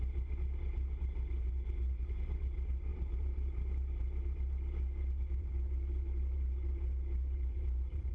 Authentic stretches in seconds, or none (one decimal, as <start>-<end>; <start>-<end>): 0.0-2.9; 3.7-5.4